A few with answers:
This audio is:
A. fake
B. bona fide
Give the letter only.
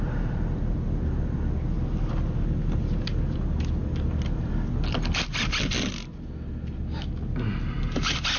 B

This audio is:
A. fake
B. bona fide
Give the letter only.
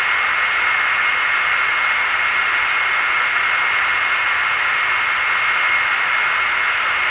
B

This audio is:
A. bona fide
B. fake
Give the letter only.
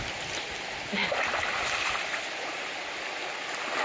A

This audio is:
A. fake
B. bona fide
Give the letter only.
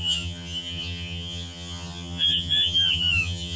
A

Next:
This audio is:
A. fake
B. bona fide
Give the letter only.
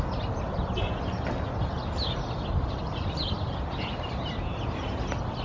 B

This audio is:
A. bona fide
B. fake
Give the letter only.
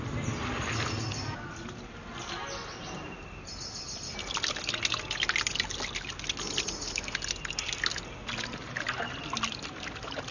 A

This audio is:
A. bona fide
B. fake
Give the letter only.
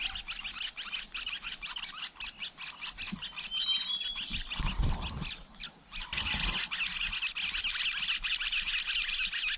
A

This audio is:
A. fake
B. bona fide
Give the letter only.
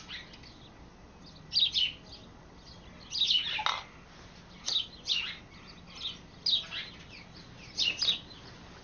B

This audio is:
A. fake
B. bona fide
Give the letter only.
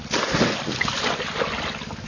B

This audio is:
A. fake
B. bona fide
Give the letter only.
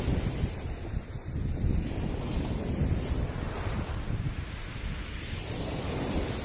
B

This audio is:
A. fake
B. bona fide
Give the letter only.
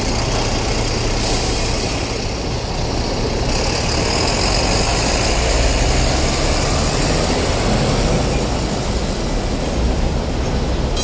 B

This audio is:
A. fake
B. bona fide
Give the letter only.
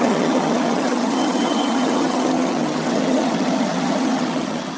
A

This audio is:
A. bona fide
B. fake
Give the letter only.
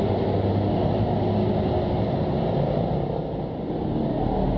A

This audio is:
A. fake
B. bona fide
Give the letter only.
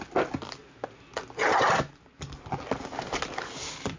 B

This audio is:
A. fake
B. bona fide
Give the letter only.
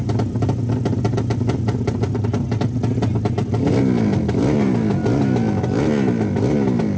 B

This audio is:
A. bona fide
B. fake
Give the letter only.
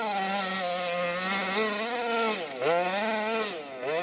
A